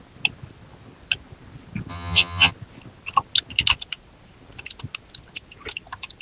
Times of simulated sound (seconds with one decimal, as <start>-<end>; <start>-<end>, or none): 1.9-2.5